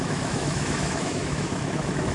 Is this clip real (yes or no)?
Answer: no